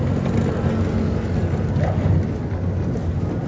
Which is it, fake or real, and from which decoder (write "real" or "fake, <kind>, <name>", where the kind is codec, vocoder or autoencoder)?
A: real